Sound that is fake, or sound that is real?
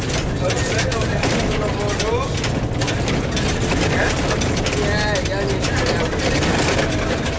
real